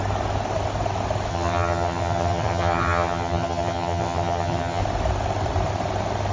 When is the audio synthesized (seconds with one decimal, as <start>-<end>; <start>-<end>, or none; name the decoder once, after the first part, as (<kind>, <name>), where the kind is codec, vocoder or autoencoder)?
1.3-4.8 (vocoder, HiFi-GAN)